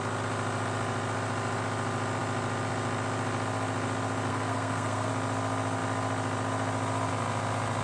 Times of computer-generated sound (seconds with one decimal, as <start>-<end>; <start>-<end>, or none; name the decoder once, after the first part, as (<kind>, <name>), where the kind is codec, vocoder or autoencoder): 4.3-5.1 (codec, SNAC)